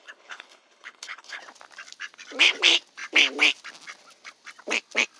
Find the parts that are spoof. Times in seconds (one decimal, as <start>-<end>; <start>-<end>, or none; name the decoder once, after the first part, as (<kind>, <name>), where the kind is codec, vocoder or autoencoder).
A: 0.0-1.4 (codec, HILCodec)

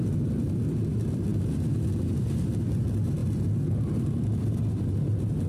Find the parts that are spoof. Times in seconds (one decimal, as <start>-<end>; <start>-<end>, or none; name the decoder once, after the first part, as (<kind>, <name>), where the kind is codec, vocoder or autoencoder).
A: none

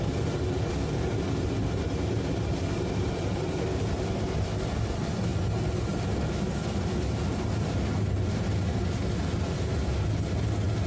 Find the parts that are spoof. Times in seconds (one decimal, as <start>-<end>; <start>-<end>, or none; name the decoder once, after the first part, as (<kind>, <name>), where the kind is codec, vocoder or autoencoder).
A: none

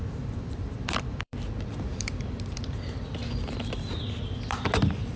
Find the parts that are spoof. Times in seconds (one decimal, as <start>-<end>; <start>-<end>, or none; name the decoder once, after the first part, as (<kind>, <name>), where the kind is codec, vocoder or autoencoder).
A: 0.0-5.2 (vocoder, BigVGAN v2)

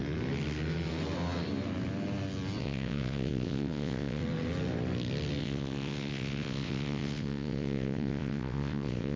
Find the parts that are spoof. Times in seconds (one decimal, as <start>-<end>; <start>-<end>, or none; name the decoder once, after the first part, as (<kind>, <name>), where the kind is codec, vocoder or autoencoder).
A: 2.6-4.2 (vocoder, WaveNeXt); 5.4-9.2